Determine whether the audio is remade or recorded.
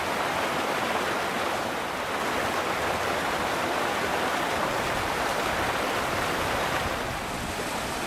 recorded